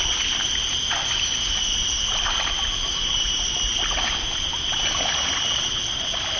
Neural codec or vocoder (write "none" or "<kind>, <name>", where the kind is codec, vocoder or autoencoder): none